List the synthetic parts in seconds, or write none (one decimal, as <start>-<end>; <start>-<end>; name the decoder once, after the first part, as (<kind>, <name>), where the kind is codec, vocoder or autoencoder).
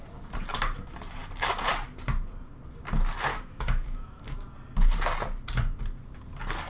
3.3-4.2 (autoencoder, DAC-VAE)